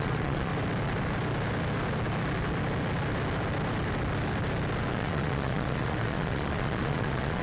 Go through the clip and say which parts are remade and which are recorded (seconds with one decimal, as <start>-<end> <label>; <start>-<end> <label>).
0.0-0.5 remade; 0.5-4.9 recorded; 4.9-7.4 remade